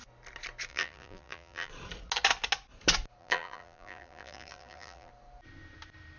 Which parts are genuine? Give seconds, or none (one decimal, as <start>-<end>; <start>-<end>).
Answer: 0.0-0.7; 1.7-3.2; 5.1-6.2